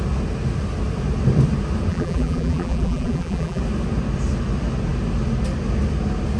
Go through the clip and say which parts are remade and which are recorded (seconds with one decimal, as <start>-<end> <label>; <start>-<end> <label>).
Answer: 0.0-1.9 recorded; 1.9-3.6 remade; 3.6-6.4 recorded